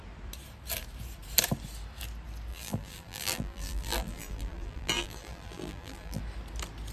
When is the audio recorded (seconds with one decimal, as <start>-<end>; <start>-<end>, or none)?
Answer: 0.0-2.5; 6.2-6.9